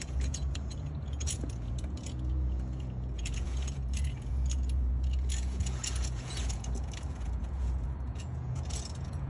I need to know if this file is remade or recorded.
remade